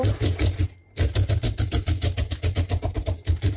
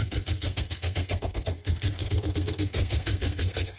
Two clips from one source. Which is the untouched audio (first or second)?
first